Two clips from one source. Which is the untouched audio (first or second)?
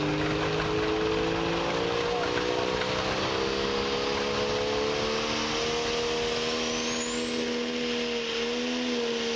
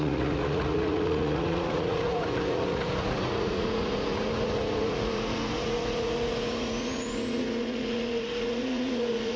first